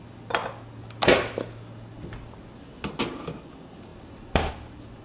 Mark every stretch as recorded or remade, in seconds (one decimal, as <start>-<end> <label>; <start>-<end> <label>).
0.0-3.9 recorded; 3.9-4.5 remade; 4.5-5.0 recorded